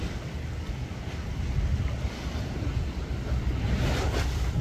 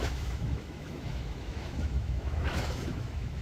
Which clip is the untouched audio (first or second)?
first